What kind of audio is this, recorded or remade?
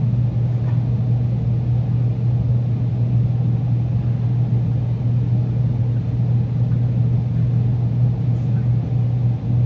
recorded